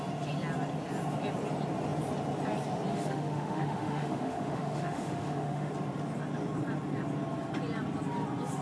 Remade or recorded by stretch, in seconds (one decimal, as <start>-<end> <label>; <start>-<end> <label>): 0.0-2.9 recorded; 2.9-5.7 remade; 5.7-8.6 recorded